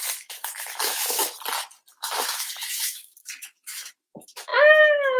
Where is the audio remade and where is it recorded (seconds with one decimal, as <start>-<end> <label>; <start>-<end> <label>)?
0.0-1.2 remade; 1.2-1.9 recorded; 1.9-5.2 remade